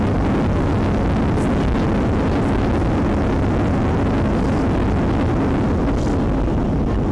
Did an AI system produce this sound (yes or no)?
no